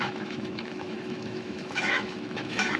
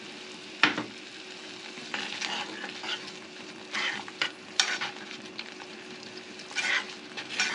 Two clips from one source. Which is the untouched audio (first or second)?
second